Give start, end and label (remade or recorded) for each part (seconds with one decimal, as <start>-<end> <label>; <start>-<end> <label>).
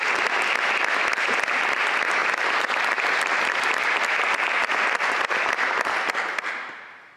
0.0-7.2 recorded